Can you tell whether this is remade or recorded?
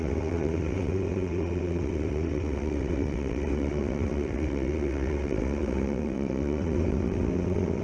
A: remade